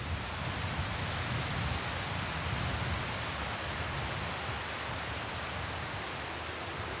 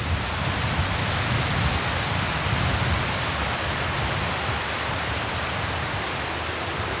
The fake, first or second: second